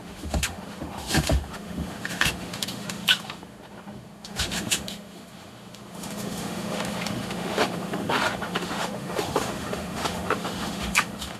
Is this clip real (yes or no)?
no